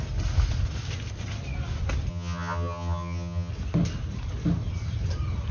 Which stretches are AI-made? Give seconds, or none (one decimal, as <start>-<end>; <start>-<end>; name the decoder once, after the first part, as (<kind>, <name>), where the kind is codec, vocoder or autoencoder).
2.1-3.5 (vocoder, HiFi-GAN)